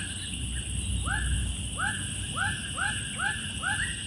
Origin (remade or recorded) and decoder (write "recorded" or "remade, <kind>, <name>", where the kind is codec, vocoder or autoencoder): recorded